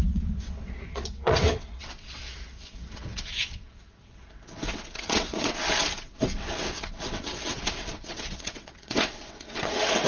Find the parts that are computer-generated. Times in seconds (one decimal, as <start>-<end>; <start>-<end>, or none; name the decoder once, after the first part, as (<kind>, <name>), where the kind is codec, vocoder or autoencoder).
0.0-10.1 (vocoder, WaveNeXt)